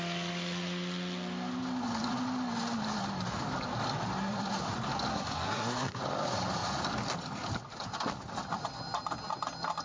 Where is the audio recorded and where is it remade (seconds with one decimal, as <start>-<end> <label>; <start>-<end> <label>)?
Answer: 0.0-5.1 recorded; 5.1-6.0 remade; 6.0-9.8 recorded